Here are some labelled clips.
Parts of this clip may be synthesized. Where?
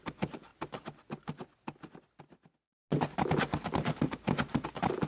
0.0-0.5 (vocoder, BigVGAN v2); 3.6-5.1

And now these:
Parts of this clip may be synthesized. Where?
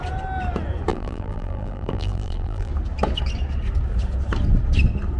0.9-2.7 (vocoder, BigVGAN v2)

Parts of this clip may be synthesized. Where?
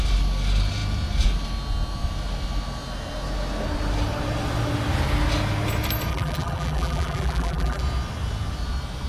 6.1-7.8 (vocoder, BigVGAN v2)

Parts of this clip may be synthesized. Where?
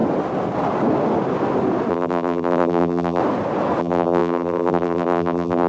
1.9-3.2 (vocoder, BigVGAN v2); 3.8-5.7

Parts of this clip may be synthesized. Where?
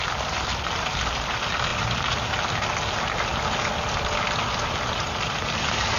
none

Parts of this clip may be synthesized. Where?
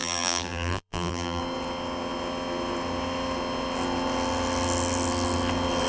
0.0-1.4 (vocoder, BigVGAN v2)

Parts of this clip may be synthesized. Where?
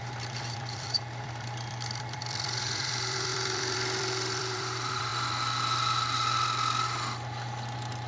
0.0-5.1 (vocoder, BigVGAN v2)